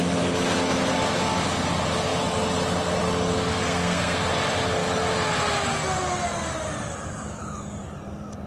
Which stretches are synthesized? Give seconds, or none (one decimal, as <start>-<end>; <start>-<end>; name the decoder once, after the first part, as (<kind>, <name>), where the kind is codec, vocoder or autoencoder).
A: 3.5-4.2 (codec, SNAC)